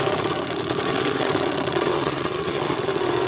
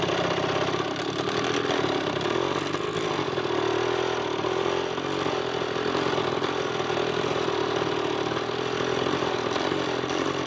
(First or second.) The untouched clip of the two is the second